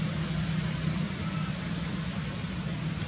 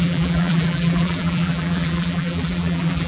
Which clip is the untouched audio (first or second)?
first